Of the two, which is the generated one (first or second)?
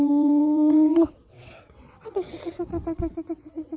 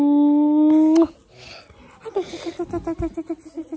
first